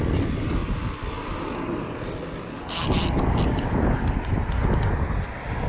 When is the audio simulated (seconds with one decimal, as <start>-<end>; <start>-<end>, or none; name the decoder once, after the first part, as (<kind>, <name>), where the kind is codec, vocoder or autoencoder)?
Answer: none

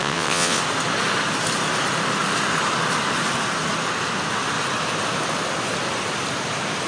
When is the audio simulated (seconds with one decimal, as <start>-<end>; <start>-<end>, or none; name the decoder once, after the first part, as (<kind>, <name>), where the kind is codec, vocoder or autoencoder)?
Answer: 0.0-0.6 (vocoder, WaveNeXt)

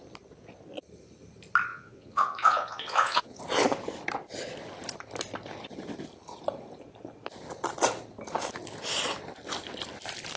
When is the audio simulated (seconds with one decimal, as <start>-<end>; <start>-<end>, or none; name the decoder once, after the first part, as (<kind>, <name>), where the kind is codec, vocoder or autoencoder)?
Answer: 1.7-3.4 (vocoder, Vocos)